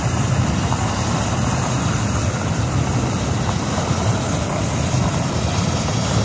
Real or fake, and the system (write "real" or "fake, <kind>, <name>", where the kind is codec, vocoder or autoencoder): real